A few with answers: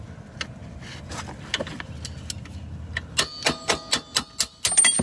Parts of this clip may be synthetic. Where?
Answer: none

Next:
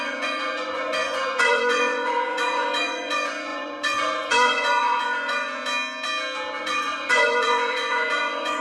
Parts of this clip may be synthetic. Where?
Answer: 0.0-5.6; 6.6-8.6

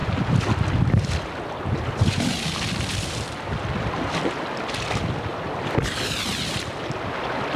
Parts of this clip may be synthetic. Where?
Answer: none

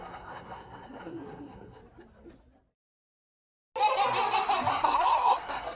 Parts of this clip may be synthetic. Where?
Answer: 0.0-1.8; 4.7-5.7